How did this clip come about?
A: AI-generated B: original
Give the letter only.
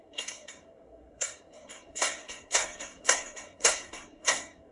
A